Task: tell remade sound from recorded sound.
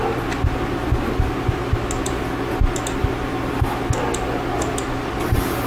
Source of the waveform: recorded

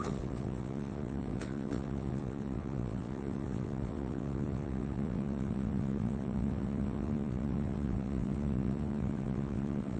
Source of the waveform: remade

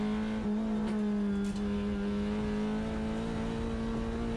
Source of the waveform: recorded